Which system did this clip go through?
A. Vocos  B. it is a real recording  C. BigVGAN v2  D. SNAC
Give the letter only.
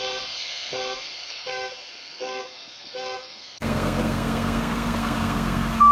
D